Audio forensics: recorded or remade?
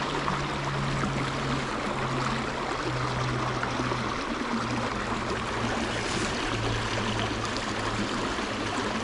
recorded